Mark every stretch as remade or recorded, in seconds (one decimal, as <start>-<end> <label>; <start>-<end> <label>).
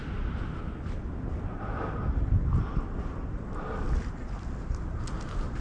0.0-5.6 recorded